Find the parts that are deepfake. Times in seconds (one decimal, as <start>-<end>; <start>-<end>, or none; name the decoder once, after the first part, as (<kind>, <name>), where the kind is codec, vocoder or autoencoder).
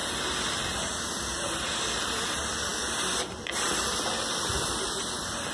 1.7-5.5 (vocoder, BigVGAN v2)